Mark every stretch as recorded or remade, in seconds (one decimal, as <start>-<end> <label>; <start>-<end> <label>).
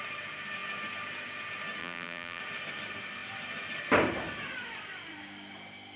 0.0-1.8 recorded; 1.8-2.4 remade; 2.4-6.0 recorded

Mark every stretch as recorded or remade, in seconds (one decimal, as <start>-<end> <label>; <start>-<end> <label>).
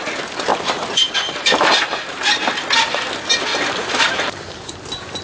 0.0-0.5 recorded; 0.5-2.5 remade; 2.5-3.5 recorded; 3.5-4.7 remade; 4.7-5.2 recorded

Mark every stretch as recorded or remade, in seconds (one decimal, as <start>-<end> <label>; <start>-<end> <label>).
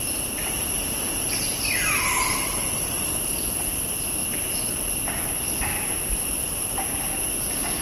0.0-6.9 remade; 6.9-7.8 recorded